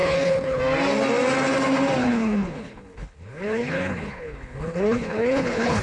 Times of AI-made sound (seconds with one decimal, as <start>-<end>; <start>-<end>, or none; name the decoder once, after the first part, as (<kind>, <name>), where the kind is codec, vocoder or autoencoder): 0.0-0.6 (codec, HILCodec); 2.0-5.8